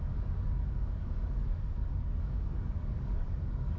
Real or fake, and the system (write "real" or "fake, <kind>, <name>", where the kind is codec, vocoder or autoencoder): fake, codec, DAC